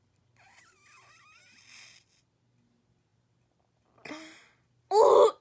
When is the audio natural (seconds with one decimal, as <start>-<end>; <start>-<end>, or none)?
0.0-5.4